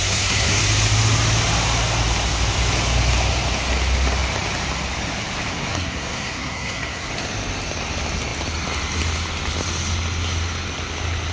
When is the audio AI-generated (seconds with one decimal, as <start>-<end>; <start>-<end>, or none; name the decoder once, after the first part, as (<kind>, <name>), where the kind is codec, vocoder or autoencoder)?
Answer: 0.0-0.6 (codec, SNAC); 5.5-7.1